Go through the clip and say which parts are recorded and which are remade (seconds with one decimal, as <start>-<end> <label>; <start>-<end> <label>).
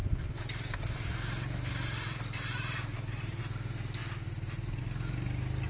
0.0-3.4 remade; 3.4-5.7 recorded